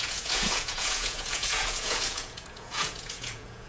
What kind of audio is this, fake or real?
fake